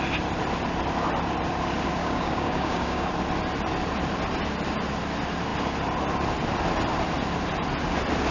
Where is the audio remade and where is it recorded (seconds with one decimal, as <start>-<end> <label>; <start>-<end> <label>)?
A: 0.0-2.0 recorded; 2.0-3.1 remade; 3.1-8.3 recorded